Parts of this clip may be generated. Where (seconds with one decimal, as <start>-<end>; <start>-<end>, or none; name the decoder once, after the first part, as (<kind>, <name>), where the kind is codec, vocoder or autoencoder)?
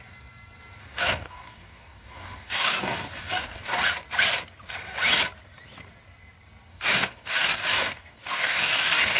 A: 0.8-3.8 (codec, DAC); 6.7-9.2